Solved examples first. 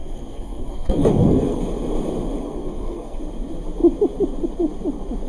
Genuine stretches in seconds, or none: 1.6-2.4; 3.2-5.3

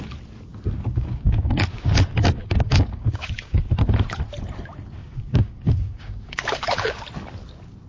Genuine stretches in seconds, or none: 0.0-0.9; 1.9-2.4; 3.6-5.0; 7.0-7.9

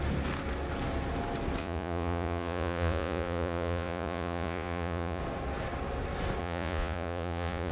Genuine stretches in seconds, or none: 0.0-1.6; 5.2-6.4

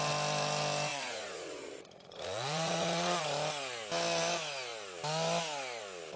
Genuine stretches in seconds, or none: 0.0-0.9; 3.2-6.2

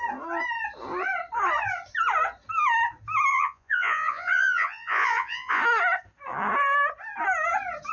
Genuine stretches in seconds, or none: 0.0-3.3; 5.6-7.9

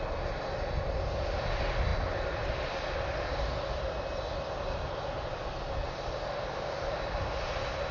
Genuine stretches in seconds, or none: 0.0-7.9

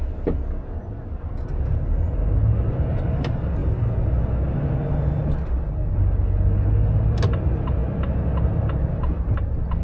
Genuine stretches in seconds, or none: 0.0-9.8

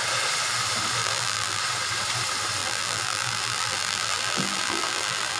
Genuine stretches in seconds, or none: 0.0-1.0; 1.6-2.6